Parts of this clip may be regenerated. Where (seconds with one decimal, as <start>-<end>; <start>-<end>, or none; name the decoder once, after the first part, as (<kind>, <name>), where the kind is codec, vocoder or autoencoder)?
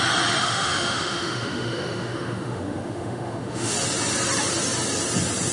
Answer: 0.4-3.7 (autoencoder, DAC-VAE)